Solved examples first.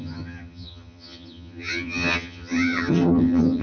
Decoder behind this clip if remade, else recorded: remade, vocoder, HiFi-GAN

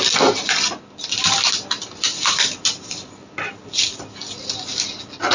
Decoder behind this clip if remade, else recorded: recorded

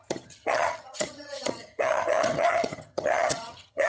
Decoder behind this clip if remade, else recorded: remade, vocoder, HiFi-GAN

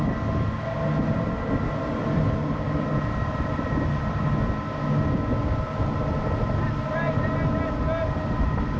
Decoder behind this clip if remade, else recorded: recorded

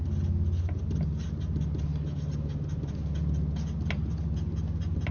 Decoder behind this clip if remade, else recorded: recorded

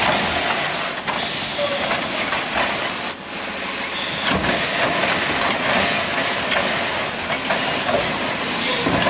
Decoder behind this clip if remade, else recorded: recorded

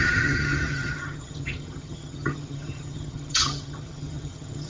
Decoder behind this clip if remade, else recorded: remade, vocoder, HiFi-GAN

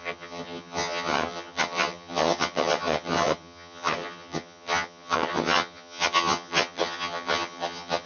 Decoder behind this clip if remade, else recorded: remade, vocoder, HiFi-GAN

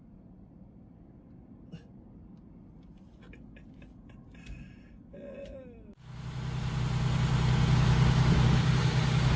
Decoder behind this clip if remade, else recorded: recorded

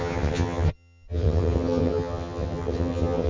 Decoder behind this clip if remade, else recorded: remade, vocoder, HiFi-GAN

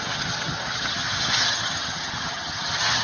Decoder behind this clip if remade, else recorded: remade, vocoder, HiFi-GAN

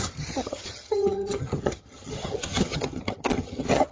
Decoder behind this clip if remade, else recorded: remade, vocoder, HiFi-GAN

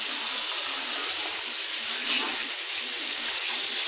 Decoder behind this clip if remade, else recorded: recorded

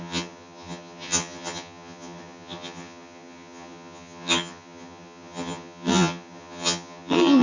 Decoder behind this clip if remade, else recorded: remade, vocoder, HiFi-GAN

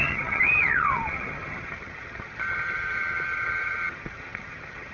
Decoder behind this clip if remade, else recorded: remade, vocoder, HiFi-GAN